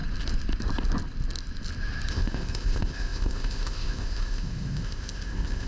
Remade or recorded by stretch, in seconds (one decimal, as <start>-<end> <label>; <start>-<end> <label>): 0.0-2.1 recorded; 2.1-5.7 remade